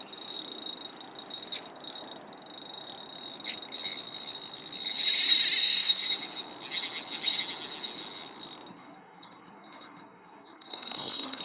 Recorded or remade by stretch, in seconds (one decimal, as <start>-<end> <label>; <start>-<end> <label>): 0.0-5.6 recorded; 5.6-6.1 remade; 6.1-8.7 recorded; 8.7-11.4 remade